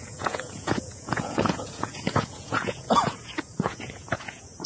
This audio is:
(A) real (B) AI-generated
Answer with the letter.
B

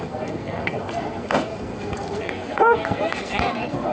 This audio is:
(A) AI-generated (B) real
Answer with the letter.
A